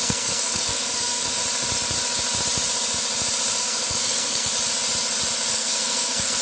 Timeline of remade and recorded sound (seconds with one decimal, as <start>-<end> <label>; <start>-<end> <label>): 0.0-1.4 remade; 1.4-3.6 recorded; 3.6-4.5 remade; 4.5-5.5 recorded; 5.5-6.4 remade